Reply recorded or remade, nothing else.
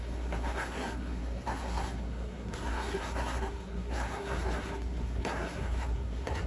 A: remade